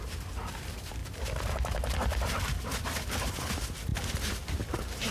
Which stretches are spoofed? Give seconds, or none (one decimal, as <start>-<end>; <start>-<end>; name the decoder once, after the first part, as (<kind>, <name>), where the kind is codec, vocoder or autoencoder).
0.0-1.0 (vocoder, BigVGAN v2); 2.6-5.1